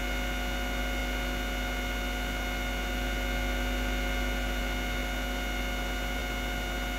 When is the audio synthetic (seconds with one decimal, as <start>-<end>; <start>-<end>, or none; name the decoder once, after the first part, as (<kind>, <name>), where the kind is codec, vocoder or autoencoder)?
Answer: none